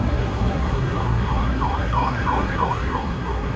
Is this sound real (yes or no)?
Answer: no